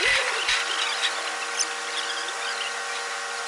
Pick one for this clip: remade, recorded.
recorded